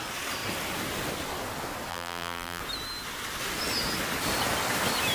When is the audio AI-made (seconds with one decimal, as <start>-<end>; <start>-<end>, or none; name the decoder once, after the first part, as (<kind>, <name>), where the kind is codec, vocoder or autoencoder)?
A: 1.9-2.6 (vocoder, BigVGAN v2)